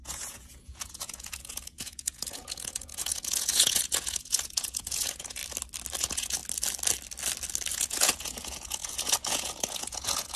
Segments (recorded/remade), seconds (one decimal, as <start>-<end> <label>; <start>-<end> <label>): 0.0-5.4 remade; 5.4-6.0 recorded; 6.0-6.4 remade; 6.4-7.7 recorded; 7.7-10.4 remade